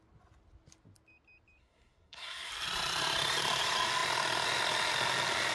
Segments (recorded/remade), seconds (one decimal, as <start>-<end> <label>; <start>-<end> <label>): 0.0-1.6 recorded; 1.6-2.5 remade; 2.5-5.5 recorded